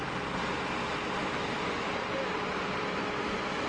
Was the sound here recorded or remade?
recorded